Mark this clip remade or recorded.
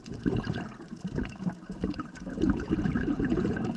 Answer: remade